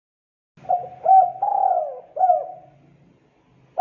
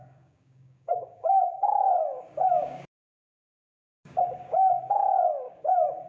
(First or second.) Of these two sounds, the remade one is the second